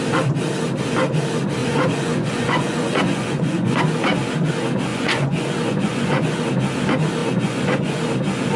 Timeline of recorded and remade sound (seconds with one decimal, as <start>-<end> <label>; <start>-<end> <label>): 0.0-1.6 recorded; 1.6-3.8 remade; 3.8-4.9 recorded; 4.9-6.4 remade; 6.4-7.2 recorded; 7.2-8.0 remade; 8.0-8.6 recorded